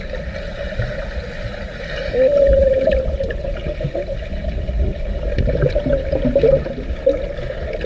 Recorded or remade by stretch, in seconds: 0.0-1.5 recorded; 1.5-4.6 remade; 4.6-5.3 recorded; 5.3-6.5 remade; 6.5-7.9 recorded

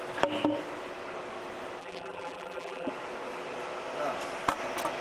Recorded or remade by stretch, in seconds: 0.0-1.8 recorded; 1.8-2.9 remade; 2.9-5.0 recorded

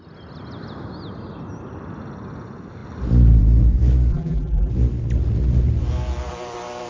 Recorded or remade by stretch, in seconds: 0.0-4.1 recorded; 4.1-4.7 remade; 4.7-6.9 recorded

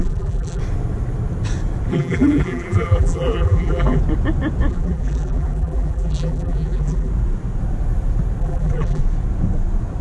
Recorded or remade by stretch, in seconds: 0.0-0.6 remade; 0.6-1.9 recorded; 1.9-4.0 remade; 4.0-4.7 recorded; 4.7-7.1 remade; 7.1-8.4 recorded; 8.4-9.0 remade; 9.0-10.0 recorded